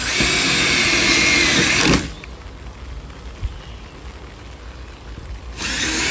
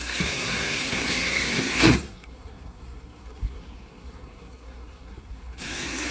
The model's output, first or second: second